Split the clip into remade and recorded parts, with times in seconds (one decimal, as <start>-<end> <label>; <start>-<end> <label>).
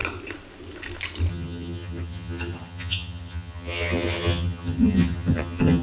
0.0-1.3 recorded; 1.3-5.8 remade